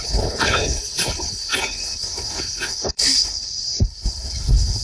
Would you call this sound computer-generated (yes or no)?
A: yes